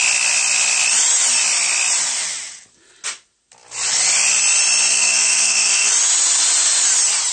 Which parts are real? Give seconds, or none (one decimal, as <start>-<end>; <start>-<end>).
0.0-4.9; 5.9-7.3